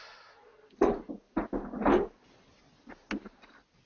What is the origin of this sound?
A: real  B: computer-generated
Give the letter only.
A